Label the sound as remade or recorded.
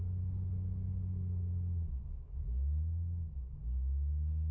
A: recorded